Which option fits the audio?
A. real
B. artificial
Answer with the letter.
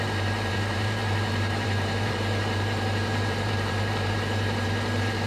B